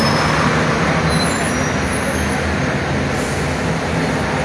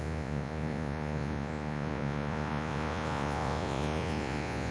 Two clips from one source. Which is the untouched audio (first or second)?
first